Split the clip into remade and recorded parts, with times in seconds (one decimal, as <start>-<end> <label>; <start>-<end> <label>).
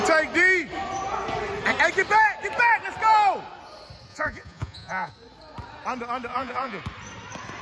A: 0.0-4.1 recorded; 4.1-5.1 remade; 5.1-6.3 recorded; 6.3-6.8 remade; 6.8-7.6 recorded